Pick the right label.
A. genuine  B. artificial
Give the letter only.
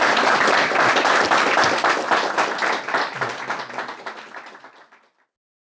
A